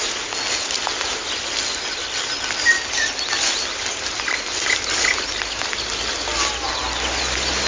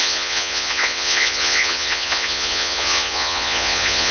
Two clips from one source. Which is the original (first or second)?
first